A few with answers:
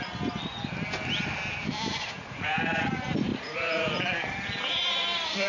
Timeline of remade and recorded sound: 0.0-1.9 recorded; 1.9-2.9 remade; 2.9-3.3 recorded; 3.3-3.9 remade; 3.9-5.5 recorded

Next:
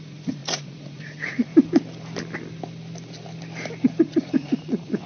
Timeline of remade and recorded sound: 0.0-1.5 remade; 1.5-4.0 recorded; 4.0-5.1 remade